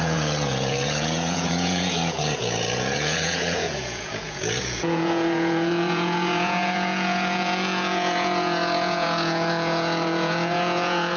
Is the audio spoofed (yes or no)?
yes